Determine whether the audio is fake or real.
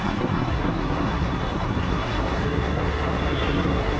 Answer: fake